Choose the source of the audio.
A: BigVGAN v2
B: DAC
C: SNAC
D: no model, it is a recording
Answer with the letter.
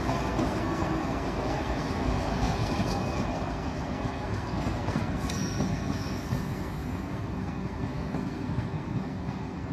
C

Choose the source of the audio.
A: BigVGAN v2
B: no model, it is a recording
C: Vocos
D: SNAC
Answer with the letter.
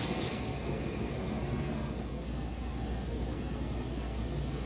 D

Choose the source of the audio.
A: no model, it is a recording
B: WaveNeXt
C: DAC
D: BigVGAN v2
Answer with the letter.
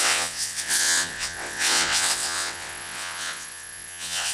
B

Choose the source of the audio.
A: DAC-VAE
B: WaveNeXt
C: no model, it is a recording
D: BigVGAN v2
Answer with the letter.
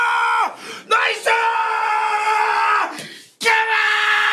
C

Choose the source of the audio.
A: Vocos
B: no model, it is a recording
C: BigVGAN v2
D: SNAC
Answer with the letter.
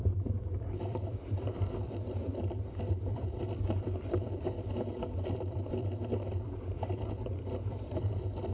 C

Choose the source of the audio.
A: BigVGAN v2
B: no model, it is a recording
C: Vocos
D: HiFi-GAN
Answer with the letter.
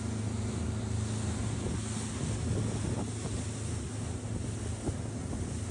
B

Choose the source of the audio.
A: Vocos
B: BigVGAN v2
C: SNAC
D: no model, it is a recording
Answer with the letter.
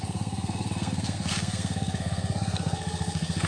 C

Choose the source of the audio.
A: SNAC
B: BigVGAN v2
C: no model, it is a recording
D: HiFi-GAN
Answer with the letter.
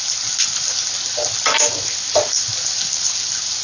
C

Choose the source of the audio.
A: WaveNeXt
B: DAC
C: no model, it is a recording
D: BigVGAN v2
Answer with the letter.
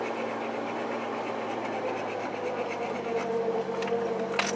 C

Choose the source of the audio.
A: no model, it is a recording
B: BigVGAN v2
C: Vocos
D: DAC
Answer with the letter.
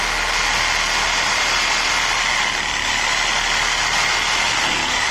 A